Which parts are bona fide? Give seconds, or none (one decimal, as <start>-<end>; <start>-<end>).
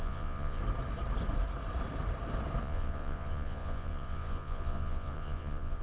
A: 0.6-2.6